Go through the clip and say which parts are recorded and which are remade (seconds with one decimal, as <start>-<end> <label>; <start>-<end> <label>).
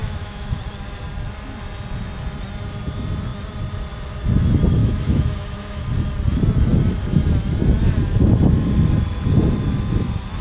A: 0.0-0.6 remade; 0.6-4.8 recorded; 4.8-5.8 remade; 5.8-10.4 recorded